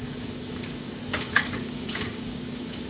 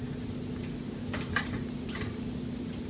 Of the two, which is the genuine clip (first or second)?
second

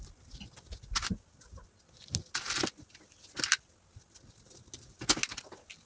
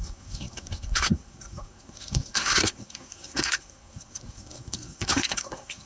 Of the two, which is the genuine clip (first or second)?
first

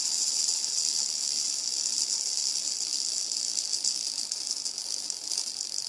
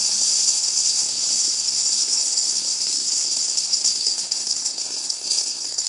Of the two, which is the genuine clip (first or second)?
first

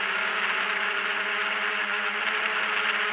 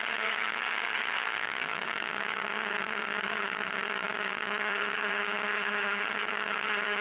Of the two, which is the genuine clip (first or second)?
first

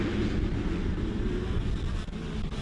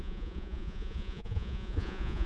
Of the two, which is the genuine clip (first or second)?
first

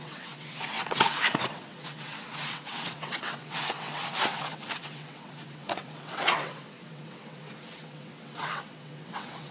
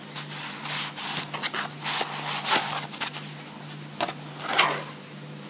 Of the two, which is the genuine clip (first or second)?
second